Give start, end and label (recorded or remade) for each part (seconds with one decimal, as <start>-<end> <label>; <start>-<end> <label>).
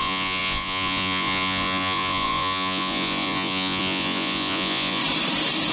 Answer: 0.0-5.0 remade; 5.0-5.7 recorded